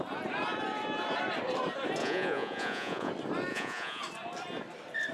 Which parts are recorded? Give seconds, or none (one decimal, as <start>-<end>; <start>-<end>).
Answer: 0.0-2.0; 3.1-3.5; 4.0-5.1

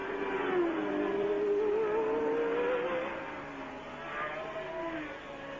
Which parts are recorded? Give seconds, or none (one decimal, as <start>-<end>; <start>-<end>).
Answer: 0.0-5.6

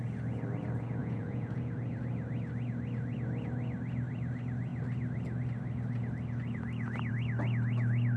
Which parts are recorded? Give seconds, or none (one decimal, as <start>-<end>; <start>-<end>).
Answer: 0.0-1.0; 1.7-8.2

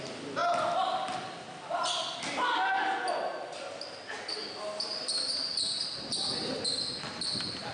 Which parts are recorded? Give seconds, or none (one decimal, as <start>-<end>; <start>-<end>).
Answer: 0.0-7.7

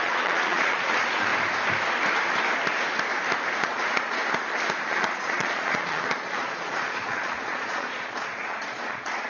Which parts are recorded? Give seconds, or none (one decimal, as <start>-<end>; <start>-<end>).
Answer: 1.3-3.6; 4.2-4.9

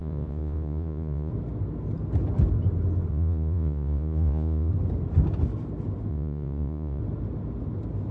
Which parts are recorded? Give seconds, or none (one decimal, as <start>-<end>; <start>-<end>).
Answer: 1.3-3.1; 4.7-6.1; 7.0-8.1

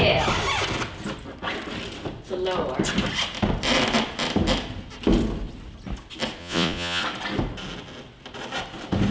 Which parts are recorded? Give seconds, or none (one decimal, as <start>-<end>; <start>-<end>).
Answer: 0.0-6.4; 7.0-9.1